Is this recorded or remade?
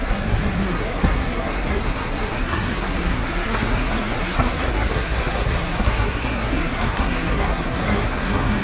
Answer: remade